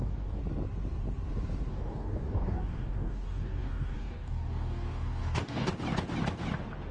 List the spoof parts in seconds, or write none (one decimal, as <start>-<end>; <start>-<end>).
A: 0.0-0.4; 1.7-5.7